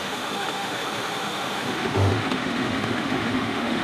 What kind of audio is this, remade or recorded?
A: remade